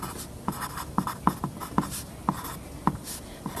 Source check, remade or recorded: recorded